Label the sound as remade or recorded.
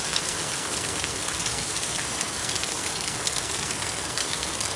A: remade